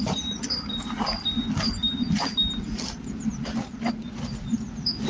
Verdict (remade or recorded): recorded